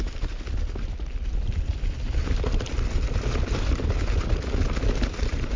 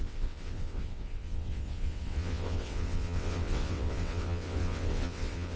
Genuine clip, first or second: first